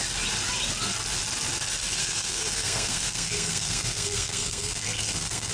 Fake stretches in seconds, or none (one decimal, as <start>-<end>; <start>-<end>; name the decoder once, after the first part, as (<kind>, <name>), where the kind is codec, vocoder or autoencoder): 2.0-5.5 (codec, SNAC)